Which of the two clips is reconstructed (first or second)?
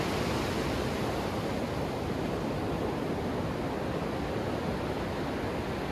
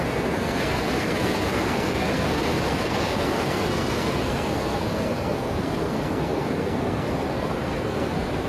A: second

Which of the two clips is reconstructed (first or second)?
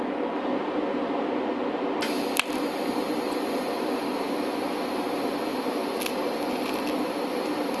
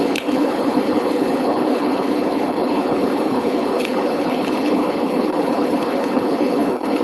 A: second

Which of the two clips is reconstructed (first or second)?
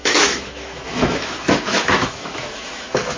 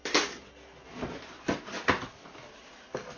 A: first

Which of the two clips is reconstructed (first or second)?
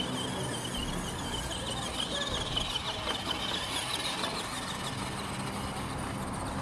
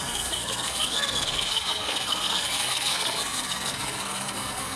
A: second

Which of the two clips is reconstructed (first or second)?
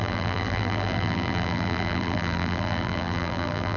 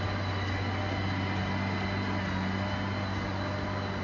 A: first